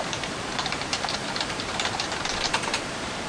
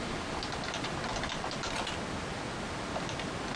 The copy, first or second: first